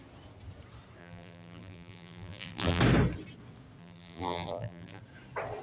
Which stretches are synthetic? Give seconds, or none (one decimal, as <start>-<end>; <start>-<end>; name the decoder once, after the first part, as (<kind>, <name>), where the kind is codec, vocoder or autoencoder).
1.0-2.8 (vocoder, BigVGAN v2); 3.8-5.0